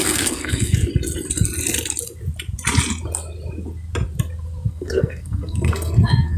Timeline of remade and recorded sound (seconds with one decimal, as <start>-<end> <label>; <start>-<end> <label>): 0.0-0.9 remade; 0.9-4.7 recorded; 4.7-6.4 remade